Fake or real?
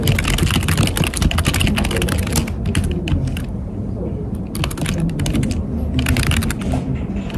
real